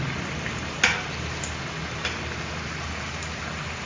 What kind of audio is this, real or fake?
real